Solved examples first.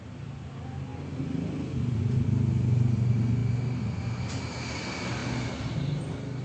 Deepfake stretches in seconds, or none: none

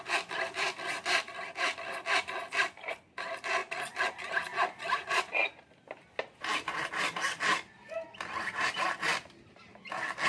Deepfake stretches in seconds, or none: none

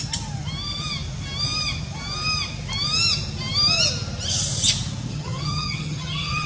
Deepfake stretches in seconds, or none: 5.1-6.5 (vocoder, HiFi-GAN)

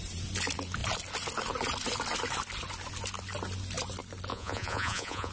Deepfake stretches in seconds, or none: 4.3-5.3 (vocoder, Vocos)

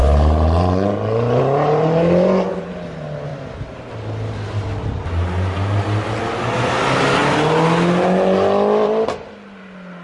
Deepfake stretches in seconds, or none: 3.3-3.9 (vocoder, BigVGAN v2)

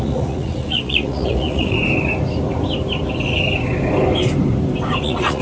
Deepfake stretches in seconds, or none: 0.0-1.8 (vocoder, Vocos); 5.0-5.4